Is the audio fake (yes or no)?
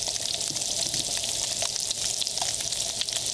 no